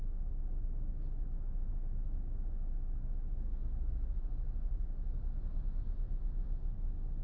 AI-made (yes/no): no